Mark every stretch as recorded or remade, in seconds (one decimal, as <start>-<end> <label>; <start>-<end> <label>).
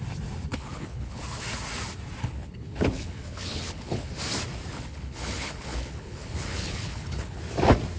0.0-0.5 recorded; 0.5-1.2 remade; 1.2-2.2 recorded; 2.2-4.1 remade; 4.1-4.7 recorded; 4.7-7.4 remade; 7.4-8.0 recorded